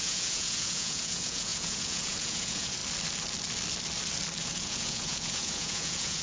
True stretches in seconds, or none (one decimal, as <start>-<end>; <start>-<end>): 2.8-4.4